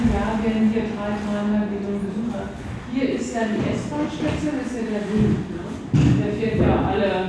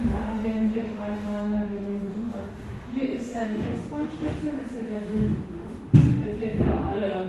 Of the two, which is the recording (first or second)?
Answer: first